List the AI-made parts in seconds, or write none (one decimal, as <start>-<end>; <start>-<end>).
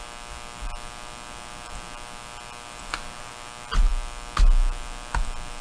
none